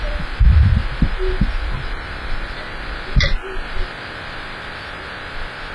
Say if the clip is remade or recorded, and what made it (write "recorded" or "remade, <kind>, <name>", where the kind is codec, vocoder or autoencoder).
recorded